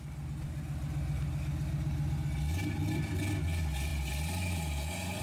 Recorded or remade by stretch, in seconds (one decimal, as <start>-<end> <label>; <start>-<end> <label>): 0.0-5.2 recorded